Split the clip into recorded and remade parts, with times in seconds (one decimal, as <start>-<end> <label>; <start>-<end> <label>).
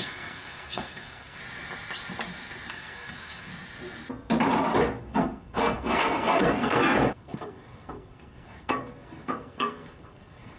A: 0.0-1.4 remade; 1.4-2.7 recorded; 2.7-3.5 remade; 3.5-5.0 recorded; 5.0-10.6 remade